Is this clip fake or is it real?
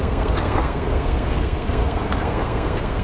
fake